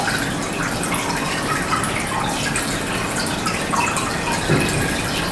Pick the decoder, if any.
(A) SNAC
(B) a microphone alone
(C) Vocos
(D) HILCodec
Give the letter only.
B